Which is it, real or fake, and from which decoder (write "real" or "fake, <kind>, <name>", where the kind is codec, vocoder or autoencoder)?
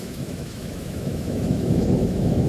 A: fake, autoencoder, DAC-VAE